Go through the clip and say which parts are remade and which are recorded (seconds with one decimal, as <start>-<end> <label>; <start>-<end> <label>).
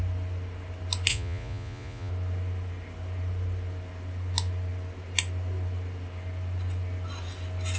0.0-1.1 recorded; 1.1-2.1 remade; 2.1-7.8 recorded